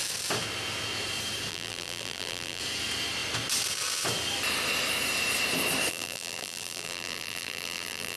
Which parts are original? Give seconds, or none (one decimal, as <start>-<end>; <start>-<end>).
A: 0.0-1.5; 2.6-5.9